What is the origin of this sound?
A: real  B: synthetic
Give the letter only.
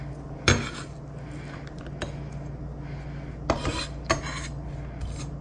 A